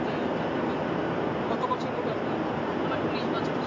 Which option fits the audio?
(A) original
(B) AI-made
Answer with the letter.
A